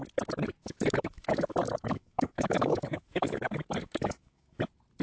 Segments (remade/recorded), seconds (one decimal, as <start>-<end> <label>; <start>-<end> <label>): 0.0-0.6 recorded; 0.6-3.4 remade; 3.4-3.8 recorded; 3.8-4.6 remade; 4.6-5.0 recorded